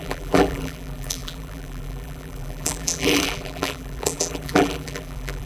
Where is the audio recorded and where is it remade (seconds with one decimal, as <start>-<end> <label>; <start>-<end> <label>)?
0.0-5.5 remade